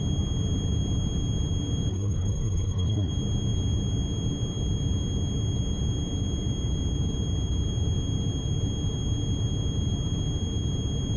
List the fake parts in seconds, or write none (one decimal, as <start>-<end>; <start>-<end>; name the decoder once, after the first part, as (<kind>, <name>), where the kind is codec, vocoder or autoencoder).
1.9-3.1 (codec, SNAC)